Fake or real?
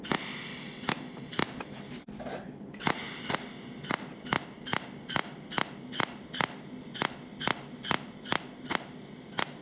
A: real